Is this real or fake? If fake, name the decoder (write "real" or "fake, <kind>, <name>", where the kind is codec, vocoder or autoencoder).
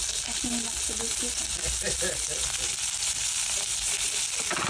real